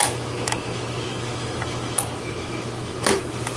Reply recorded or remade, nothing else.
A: remade